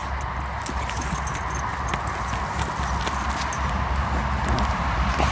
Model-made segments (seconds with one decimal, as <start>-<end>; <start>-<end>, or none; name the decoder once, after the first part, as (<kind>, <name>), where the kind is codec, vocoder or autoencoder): none